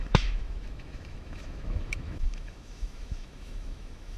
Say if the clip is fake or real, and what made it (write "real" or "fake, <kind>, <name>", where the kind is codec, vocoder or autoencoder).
fake, autoencoder, DAC-VAE